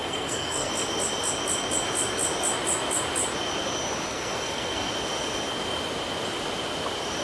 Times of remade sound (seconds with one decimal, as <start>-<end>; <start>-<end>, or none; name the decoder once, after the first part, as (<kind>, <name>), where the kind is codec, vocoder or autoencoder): 0.0-0.7 (codec, SNAC); 4.1-4.9